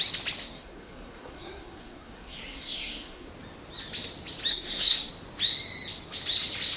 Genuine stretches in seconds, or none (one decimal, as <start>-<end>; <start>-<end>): 0.0-0.4; 3.3-4.5; 5.1-6.8